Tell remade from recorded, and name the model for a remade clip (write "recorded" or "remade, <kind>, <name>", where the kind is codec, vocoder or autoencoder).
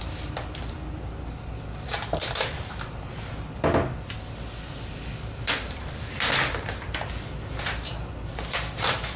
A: recorded